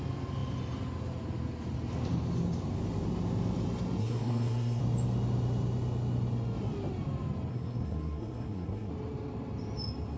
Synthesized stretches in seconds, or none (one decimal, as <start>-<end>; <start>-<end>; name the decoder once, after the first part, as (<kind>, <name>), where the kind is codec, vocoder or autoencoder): 4.0-4.8 (codec, SNAC); 7.5-8.9